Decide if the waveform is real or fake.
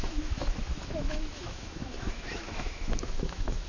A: fake